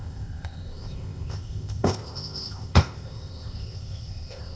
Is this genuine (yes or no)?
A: no